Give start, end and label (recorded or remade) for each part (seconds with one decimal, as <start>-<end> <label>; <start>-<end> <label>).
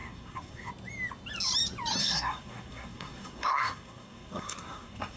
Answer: 0.0-0.7 remade; 0.7-2.0 recorded; 2.0-5.2 remade